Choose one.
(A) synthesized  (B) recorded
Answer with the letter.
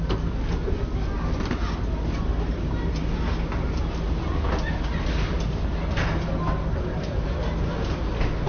B